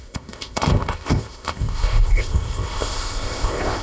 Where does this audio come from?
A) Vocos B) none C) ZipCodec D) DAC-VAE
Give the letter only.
C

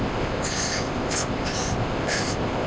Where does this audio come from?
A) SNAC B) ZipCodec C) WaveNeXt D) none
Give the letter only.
B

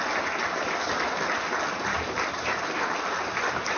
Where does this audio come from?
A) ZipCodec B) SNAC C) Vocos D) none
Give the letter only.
D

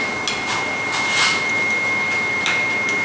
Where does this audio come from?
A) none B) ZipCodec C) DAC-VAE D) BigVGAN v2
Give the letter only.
A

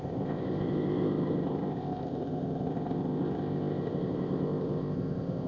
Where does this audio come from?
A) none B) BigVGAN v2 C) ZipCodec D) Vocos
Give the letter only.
C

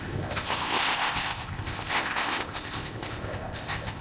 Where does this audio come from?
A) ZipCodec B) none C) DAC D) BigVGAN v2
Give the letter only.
A